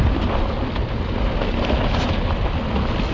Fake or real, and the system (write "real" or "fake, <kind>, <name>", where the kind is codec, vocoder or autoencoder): real